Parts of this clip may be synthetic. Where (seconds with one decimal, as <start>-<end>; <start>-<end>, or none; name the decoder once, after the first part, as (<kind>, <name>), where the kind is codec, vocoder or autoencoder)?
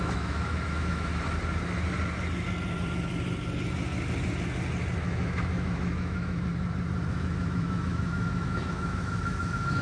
0.0-1.1 (autoencoder, DAC-VAE); 5.0-6.5; 7.1-9.8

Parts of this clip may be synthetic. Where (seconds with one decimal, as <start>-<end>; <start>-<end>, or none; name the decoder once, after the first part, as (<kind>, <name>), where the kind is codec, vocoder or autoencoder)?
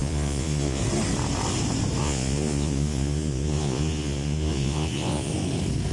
0.0-0.8 (vocoder, Vocos); 2.0-5.3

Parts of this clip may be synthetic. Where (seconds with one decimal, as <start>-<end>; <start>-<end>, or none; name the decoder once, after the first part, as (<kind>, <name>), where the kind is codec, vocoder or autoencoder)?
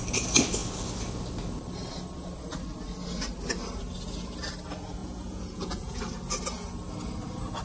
5.0-6.0 (vocoder, Vocos)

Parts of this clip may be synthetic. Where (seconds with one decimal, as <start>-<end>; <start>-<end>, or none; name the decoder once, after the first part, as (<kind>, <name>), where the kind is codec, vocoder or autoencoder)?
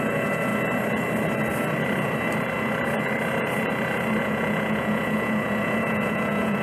0.0-0.5 (vocoder, Vocos); 4.2-6.6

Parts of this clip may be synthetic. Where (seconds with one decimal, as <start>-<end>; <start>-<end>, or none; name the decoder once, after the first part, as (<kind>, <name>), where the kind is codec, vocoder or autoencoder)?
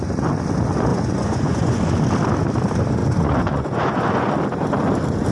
0.9-1.9 (vocoder, Vocos); 3.0-4.3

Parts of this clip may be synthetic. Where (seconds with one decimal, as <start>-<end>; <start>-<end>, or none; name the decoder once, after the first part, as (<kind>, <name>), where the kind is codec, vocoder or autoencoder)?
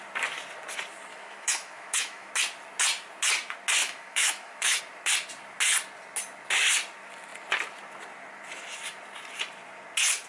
1.1-2.3 (autoencoder, DAC-VAE); 3.8-4.8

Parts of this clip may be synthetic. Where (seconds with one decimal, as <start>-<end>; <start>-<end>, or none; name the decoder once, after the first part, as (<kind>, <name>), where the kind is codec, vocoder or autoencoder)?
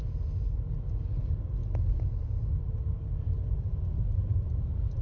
none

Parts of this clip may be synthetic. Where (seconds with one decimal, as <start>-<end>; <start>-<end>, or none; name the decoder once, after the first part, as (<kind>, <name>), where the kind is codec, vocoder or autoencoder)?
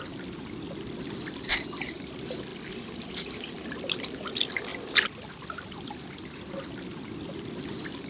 4.7-6.6 (vocoder, BigVGAN v2)